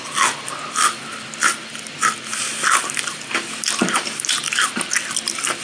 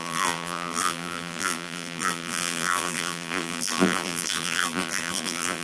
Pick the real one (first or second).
first